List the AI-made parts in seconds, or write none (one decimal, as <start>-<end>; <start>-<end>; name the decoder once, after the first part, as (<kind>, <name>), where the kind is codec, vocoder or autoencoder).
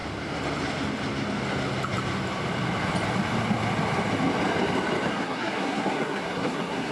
5.1-6.9 (codec, SNAC)